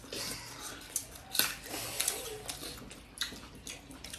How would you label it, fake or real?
real